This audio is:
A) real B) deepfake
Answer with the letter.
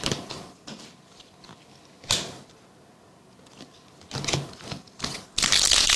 A